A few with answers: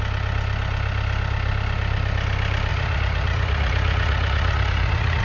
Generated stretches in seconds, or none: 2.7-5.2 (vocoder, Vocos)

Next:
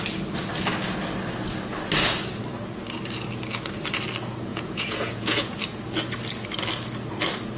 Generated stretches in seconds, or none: 4.5-5.6 (vocoder, Vocos)

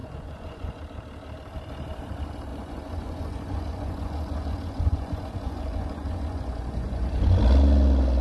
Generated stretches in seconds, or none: 0.0-0.8 (vocoder, Vocos); 2.5-7.4

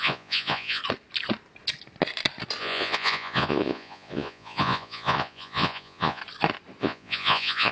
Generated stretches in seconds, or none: 0.0-0.8 (vocoder, Vocos); 2.6-6.2; 6.8-7.7

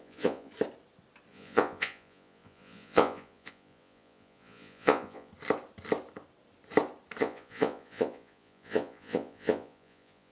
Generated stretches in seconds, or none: 0.0-0.5 (vocoder, Vocos); 1.3-5.3; 7.2-10.3

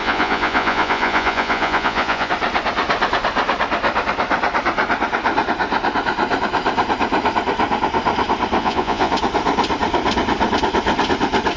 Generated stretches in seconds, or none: 0.0-2.3 (vocoder, Vocos); 8.6-9.1

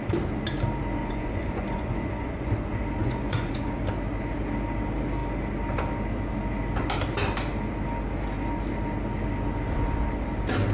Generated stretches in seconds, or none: 1.0-2.5 (vocoder, Vocos); 3.0-3.7